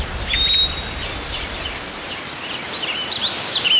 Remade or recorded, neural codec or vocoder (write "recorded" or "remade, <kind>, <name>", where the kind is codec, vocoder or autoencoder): recorded